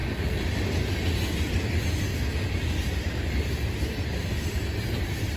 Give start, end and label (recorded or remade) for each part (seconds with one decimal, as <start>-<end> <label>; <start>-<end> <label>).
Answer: 0.0-5.4 recorded